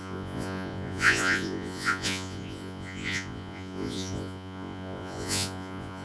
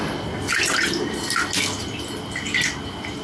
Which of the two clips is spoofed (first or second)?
first